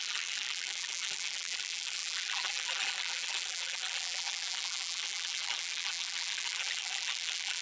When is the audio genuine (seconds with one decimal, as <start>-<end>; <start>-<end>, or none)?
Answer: none